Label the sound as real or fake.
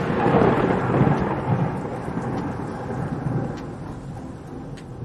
real